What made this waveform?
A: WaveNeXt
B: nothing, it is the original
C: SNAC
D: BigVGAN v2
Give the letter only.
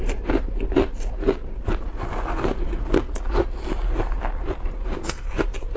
B